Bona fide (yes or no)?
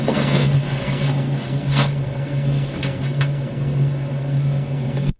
no